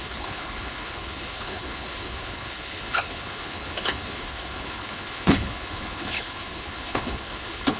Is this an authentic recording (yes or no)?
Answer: no